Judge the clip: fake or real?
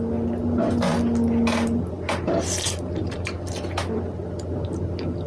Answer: real